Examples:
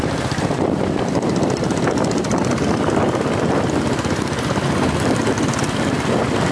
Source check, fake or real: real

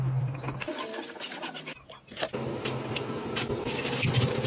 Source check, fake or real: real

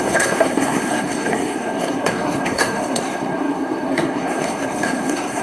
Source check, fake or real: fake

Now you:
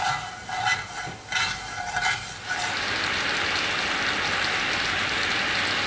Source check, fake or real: real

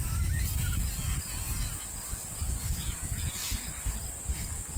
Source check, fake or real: real